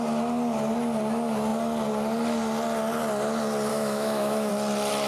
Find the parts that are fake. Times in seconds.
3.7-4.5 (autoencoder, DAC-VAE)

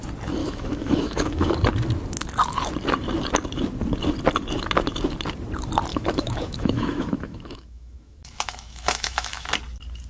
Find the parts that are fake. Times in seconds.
0.4-1.5 (autoencoder, DAC-VAE); 5.9-9.5

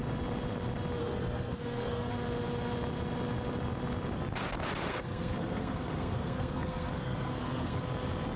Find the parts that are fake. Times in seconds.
1.0-2.1 (codec, SNAC); 4.9-7.8

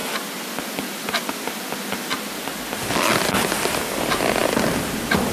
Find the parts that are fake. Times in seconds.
none

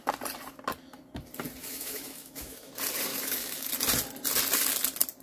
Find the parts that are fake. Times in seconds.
1.6-2.7 (autoencoder, DAC-VAE); 3.1-3.7

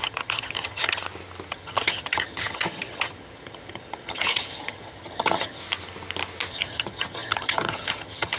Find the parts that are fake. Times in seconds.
0.0-1.0 (vocoder, HiFi-GAN); 1.5-5.6; 6.5-8.4

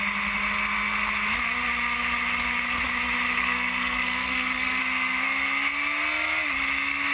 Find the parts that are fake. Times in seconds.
3.3-4.8 (codec, SNAC)

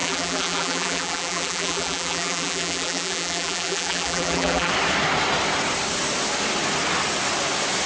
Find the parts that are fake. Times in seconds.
0.0-4.7 (vocoder, BigVGAN v2)